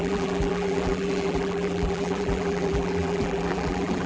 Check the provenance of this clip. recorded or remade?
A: remade